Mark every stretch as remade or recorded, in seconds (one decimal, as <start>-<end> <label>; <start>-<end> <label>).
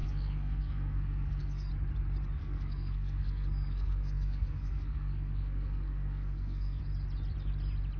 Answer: 0.0-1.7 remade; 1.7-2.4 recorded; 2.4-6.8 remade; 6.8-8.0 recorded